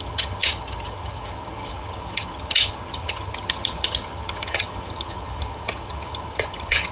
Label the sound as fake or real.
fake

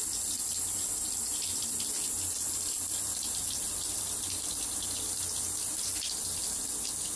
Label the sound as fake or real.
fake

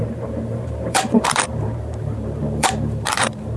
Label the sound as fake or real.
fake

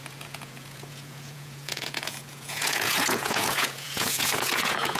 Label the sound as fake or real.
fake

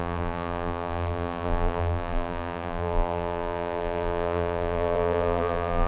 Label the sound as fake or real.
fake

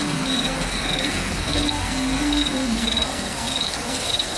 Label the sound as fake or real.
fake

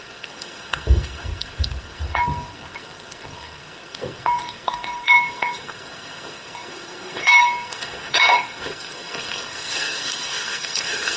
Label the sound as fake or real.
fake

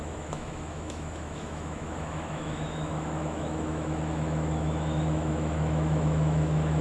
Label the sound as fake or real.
fake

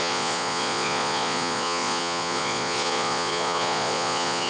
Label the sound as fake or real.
fake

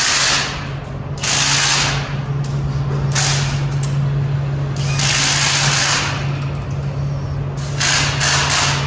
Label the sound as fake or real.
real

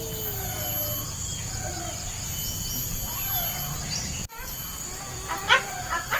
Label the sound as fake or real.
real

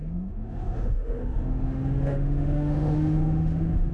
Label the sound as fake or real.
fake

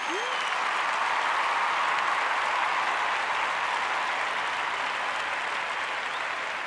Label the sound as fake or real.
real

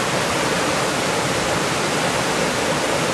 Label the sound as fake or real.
real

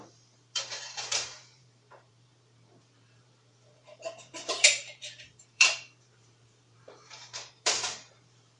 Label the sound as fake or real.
fake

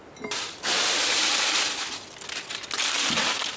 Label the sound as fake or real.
real